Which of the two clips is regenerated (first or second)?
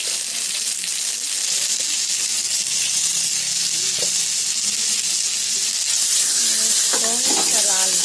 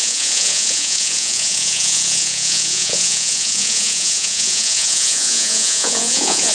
second